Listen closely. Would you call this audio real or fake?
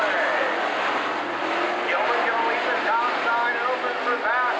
real